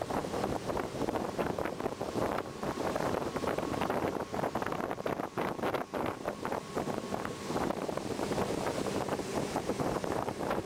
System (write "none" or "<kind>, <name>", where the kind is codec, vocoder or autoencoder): vocoder, BigVGAN v2